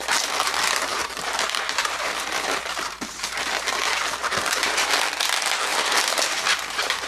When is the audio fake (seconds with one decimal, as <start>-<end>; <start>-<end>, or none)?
0.9-3.3; 4.2-4.9; 5.7-7.1